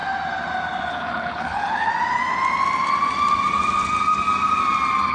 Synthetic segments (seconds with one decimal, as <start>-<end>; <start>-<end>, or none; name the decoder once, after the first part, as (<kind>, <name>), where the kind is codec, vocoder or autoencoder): 0.9-1.9 (codec, HILCodec)